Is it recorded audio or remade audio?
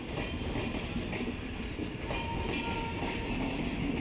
recorded